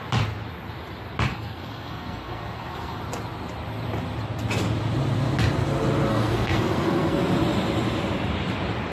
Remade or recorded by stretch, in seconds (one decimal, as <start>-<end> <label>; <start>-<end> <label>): 0.0-1.3 recorded; 1.3-3.0 remade; 3.0-6.1 recorded; 6.1-7.2 remade; 7.2-8.9 recorded